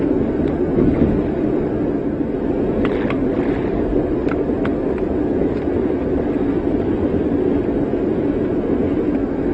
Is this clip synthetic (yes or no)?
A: no